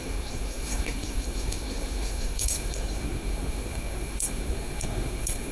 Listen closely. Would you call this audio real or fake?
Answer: fake